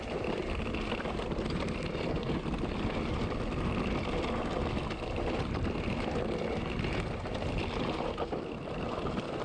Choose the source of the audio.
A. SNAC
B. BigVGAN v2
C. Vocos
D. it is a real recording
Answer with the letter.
D